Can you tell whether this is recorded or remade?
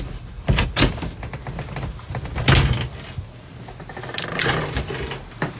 recorded